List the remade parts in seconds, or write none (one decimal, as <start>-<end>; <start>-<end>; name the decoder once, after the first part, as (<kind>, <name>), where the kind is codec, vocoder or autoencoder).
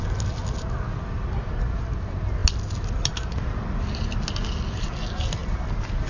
none